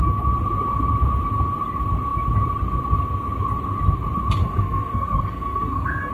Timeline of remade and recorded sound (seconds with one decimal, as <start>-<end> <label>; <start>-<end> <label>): 0.0-4.4 recorded; 4.4-6.1 remade

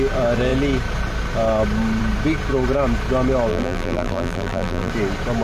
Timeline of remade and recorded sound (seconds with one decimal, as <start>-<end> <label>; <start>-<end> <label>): 0.0-3.5 recorded; 3.5-4.9 remade; 4.9-5.4 recorded

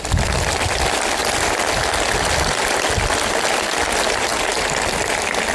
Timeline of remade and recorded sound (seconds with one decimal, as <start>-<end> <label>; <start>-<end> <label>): 0.0-5.5 recorded

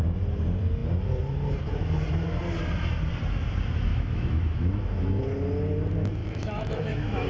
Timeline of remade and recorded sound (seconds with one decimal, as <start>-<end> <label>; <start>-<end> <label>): 0.0-3.9 recorded; 3.9-5.2 remade; 5.2-6.2 recorded; 6.2-7.3 remade

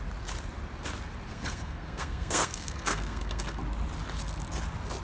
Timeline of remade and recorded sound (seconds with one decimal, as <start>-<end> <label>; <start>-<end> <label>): 0.0-1.3 recorded; 1.3-3.6 remade; 3.6-5.0 recorded

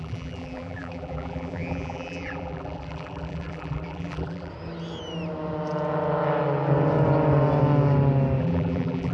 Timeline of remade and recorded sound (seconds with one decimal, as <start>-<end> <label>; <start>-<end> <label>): 0.0-4.5 remade; 4.5-8.4 recorded; 8.4-9.1 remade

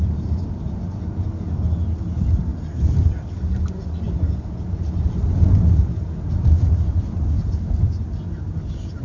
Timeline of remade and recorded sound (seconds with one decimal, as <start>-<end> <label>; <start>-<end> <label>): 0.0-9.0 recorded

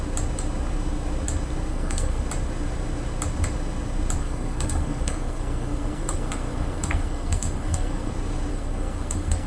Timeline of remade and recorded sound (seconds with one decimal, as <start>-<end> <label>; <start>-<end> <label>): 0.0-1.7 recorded; 1.7-2.2 remade; 2.2-4.2 recorded; 4.2-8.1 remade; 8.1-8.5 recorded; 8.5-9.5 remade